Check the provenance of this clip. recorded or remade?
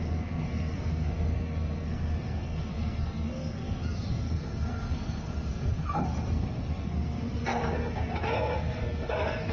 remade